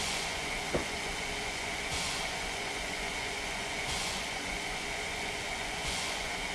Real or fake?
fake